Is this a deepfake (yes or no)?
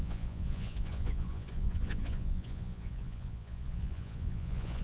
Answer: yes